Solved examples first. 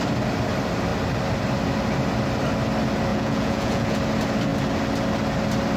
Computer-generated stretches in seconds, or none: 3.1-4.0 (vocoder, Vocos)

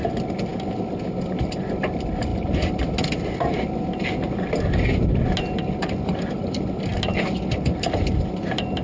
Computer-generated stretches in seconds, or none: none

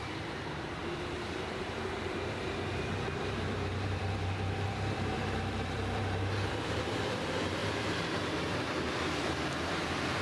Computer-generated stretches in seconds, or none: 0.0-10.2 (vocoder, BigVGAN v2)